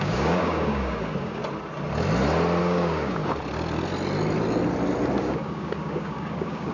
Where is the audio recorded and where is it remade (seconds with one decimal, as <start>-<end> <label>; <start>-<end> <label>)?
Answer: 0.0-1.4 remade; 1.4-2.6 recorded; 2.6-3.2 remade; 3.2-5.2 recorded; 5.2-6.7 remade